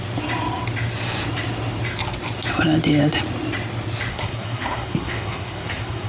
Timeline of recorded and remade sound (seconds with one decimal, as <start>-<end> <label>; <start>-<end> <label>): 0.0-4.1 recorded; 4.1-6.1 remade